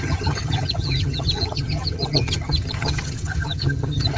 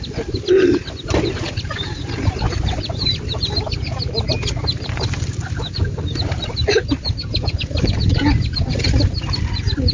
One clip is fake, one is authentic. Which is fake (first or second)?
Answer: first